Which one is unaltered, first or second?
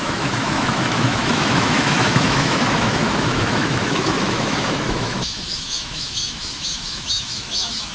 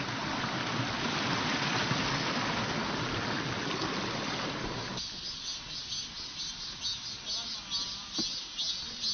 second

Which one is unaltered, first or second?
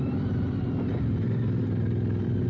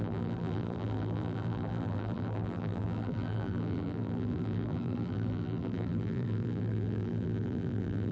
first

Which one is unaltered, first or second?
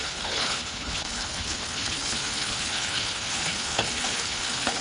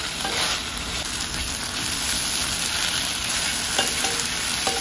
second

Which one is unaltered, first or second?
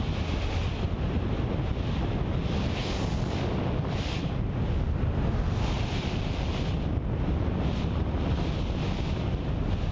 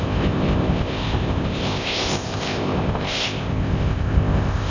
first